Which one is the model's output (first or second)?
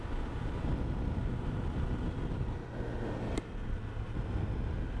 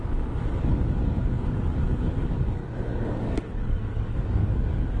second